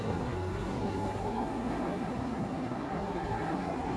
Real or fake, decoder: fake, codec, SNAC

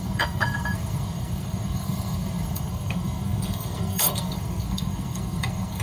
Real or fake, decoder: fake, codec, SNAC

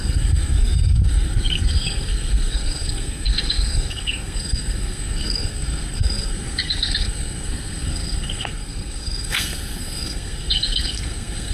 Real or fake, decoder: fake, codec, SNAC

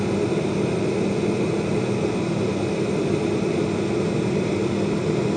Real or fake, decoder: real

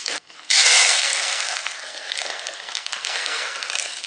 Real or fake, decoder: fake, codec, SNAC